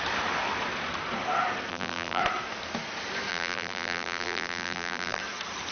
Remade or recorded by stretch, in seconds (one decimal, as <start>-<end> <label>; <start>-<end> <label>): 0.0-1.7 recorded; 1.7-2.2 remade; 2.2-3.3 recorded; 3.3-5.2 remade; 5.2-5.7 recorded